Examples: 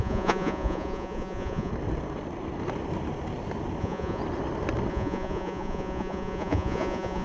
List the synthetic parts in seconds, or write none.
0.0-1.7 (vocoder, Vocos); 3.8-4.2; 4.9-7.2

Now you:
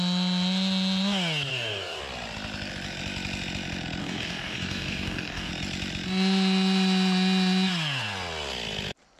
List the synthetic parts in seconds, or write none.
1.5-2.0 (codec, DAC); 4.0-5.5

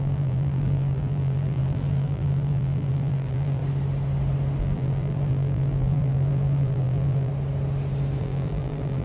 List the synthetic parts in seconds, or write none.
0.0-3.6 (vocoder, BigVGAN v2); 4.6-7.3; 8.2-9.0

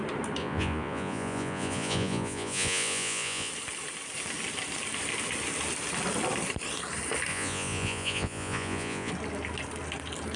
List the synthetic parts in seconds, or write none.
0.4-3.5 (vocoder, Vocos); 7.3-9.1

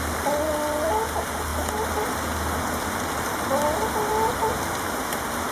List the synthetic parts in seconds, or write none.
none

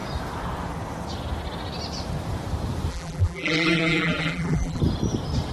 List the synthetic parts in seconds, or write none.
2.9-4.8 (vocoder, BigVGAN v2)